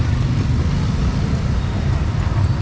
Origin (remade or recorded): recorded